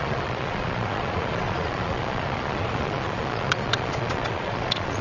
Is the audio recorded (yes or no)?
no